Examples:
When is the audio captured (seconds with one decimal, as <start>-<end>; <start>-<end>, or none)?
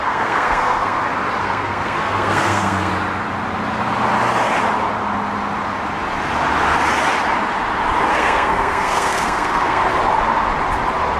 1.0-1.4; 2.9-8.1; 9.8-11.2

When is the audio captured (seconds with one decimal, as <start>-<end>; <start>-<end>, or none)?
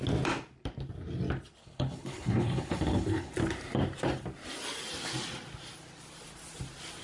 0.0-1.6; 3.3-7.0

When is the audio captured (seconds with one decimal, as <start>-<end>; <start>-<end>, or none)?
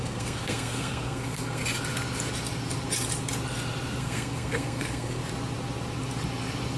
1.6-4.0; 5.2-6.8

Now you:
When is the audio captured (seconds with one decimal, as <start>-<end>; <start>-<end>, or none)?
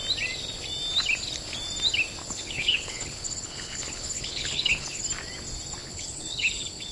0.0-2.2; 5.0-5.8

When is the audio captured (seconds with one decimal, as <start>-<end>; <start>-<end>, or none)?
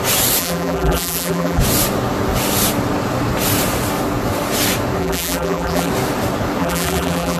0.0-0.4; 1.6-5.0; 5.9-6.6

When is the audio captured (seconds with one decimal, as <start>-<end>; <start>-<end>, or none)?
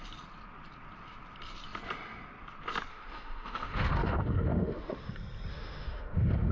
0.0-2.9; 5.1-5.5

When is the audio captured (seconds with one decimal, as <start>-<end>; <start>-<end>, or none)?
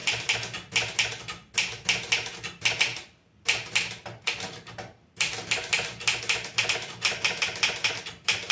0.0-8.5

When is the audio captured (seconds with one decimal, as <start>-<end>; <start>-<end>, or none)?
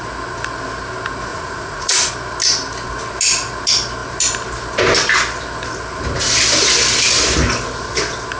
0.0-1.3; 2.1-8.4